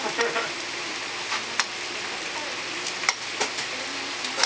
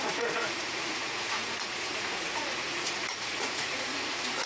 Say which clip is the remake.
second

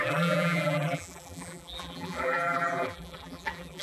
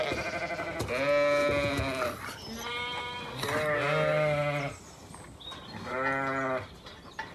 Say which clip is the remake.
first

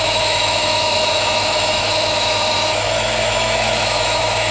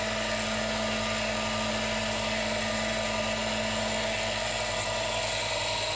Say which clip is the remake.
first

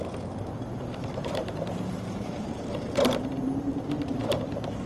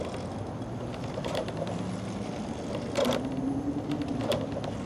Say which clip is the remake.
first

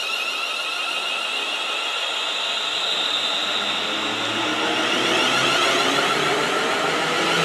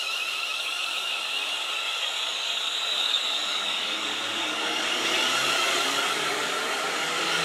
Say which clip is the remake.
second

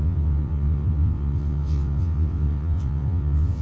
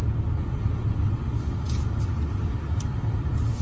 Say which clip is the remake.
first